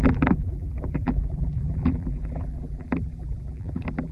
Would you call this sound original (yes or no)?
no